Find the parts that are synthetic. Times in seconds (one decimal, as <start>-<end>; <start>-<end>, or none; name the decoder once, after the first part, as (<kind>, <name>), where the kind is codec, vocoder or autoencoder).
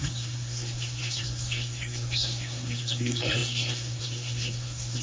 0.0-5.0 (codec, SNAC)